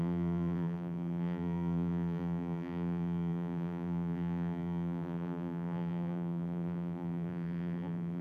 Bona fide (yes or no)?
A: no